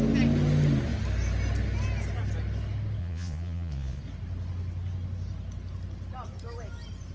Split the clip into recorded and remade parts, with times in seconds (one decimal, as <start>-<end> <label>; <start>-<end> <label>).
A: 0.0-3.0 recorded; 3.0-4.0 remade; 4.0-7.1 recorded